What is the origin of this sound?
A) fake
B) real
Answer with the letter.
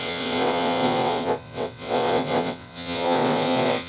A